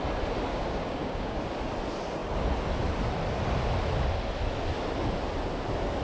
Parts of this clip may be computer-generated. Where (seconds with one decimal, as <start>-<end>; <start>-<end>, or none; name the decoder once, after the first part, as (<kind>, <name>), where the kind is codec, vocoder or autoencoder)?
0.5-1.4 (codec, DAC)